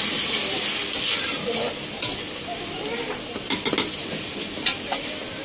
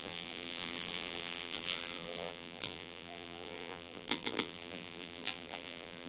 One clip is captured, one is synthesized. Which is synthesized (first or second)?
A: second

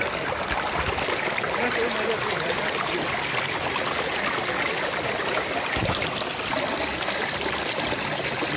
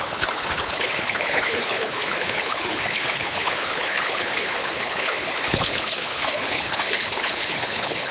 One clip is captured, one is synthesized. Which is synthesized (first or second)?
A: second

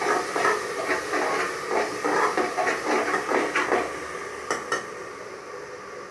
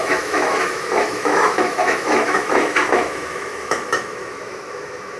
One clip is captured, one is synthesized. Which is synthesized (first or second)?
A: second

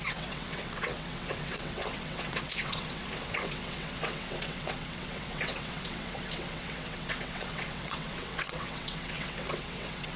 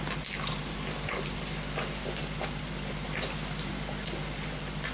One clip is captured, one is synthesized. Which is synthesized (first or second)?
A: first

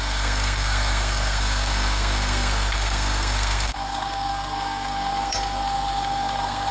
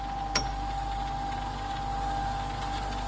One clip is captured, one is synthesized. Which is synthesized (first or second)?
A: first